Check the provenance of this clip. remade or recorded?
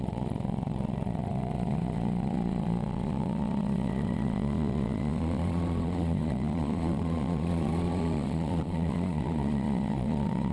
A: remade